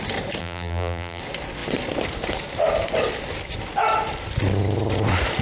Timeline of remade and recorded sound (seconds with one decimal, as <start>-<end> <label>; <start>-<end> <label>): 0.0-0.4 recorded; 0.4-1.2 remade; 1.2-5.4 recorded